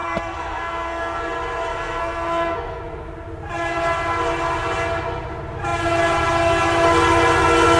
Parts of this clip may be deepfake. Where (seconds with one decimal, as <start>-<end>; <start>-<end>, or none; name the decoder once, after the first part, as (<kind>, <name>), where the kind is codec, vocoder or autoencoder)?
0.0-1.2 (codec, SNAC); 1.7-2.8